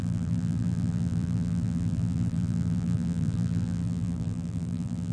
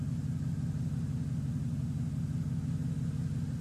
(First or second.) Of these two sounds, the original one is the second